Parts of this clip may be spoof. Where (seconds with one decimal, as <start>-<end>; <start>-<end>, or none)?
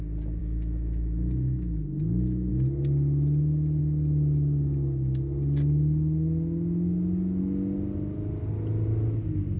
0.4-2.5